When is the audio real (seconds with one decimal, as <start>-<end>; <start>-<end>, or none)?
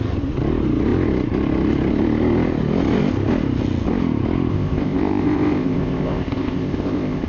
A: 0.0-4.5